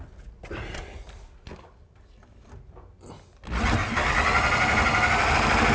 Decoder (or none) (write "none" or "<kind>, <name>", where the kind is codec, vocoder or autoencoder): none